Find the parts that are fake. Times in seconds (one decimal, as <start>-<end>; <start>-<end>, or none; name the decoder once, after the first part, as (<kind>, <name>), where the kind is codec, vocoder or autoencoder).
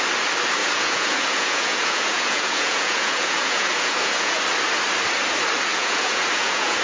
0.6-4.4 (vocoder, Vocos); 5.7-6.8